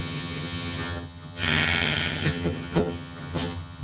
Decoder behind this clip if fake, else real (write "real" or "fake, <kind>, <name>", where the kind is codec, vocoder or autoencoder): fake, vocoder, HiFi-GAN